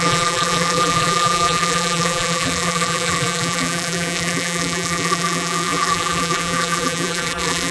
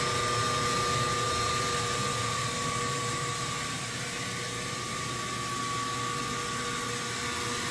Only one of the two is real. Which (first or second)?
second